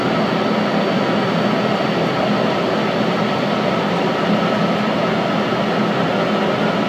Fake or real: real